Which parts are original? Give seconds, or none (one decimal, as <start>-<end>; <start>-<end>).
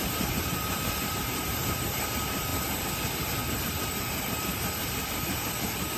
2.5-3.6